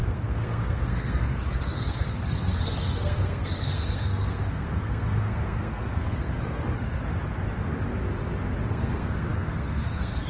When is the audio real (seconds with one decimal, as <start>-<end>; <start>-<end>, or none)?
7.0-8.7

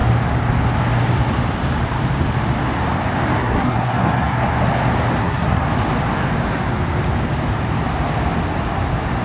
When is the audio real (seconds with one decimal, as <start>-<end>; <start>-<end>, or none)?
0.0-3.4; 4.4-5.2; 5.7-9.2

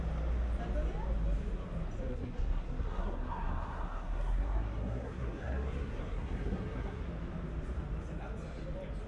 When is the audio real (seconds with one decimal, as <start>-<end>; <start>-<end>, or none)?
0.0-2.1; 7.0-9.1

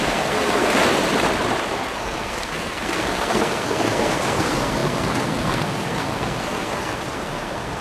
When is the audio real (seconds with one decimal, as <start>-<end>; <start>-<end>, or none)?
0.8-1.7

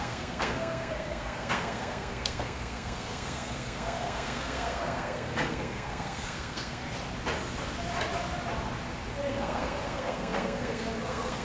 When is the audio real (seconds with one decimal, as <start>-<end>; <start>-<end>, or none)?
6.8-9.3

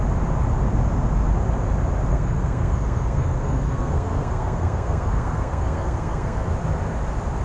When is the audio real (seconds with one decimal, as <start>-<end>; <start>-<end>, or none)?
0.0-2.1; 6.5-7.4